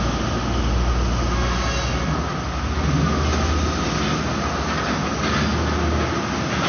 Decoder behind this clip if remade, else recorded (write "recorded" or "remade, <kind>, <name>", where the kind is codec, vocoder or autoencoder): recorded